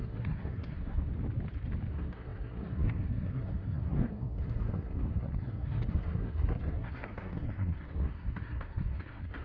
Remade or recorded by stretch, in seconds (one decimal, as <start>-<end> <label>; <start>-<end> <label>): 0.0-1.1 remade; 1.1-1.9 recorded; 1.9-9.4 remade